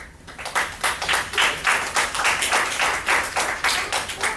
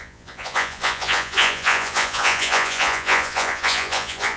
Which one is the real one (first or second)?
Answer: first